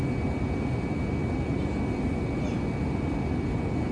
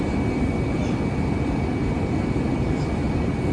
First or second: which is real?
first